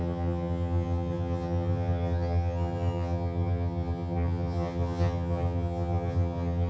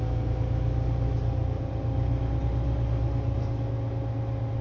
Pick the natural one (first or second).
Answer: second